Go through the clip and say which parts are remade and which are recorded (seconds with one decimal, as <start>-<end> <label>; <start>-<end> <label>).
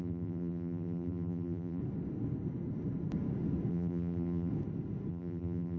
0.0-1.8 remade; 1.8-3.7 recorded; 3.7-4.5 remade; 4.5-5.1 recorded; 5.1-5.8 remade